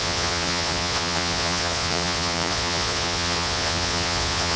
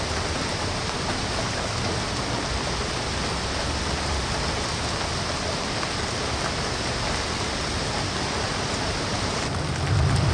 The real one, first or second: second